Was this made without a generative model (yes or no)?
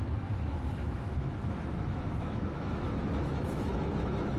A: no